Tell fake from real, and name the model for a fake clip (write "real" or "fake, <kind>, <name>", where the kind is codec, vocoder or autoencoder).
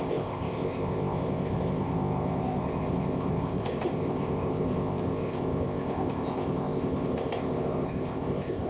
fake, codec, ZipCodec